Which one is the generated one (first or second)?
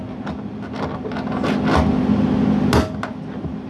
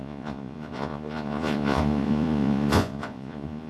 second